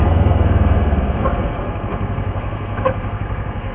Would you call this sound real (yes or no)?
no